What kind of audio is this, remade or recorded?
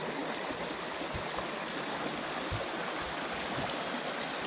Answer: recorded